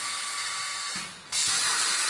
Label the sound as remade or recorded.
recorded